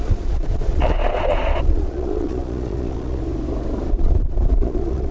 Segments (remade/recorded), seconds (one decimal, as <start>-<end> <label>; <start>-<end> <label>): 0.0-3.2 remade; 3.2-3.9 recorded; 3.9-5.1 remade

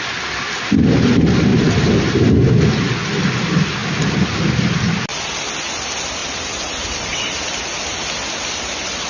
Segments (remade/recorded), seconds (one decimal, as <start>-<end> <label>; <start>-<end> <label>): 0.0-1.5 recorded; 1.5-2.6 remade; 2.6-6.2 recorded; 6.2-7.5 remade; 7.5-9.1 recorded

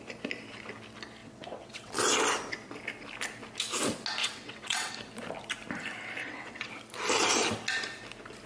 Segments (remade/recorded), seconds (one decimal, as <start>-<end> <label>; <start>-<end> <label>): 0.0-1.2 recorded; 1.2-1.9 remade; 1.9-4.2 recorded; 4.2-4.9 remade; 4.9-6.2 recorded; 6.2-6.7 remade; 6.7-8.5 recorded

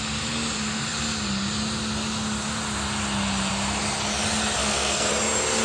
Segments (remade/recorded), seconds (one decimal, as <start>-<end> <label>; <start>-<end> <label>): 0.0-4.6 recorded; 4.6-5.1 remade; 5.1-5.6 recorded